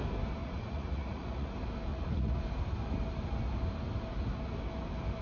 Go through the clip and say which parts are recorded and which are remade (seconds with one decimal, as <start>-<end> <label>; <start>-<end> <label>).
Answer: 0.0-0.4 recorded; 0.4-1.5 remade; 1.5-1.9 recorded; 1.9-2.4 remade; 2.4-5.2 recorded